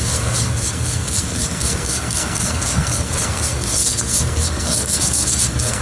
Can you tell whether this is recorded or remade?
remade